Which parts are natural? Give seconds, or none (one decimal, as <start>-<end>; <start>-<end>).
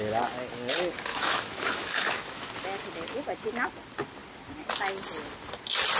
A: 0.0-1.1; 2.5-6.0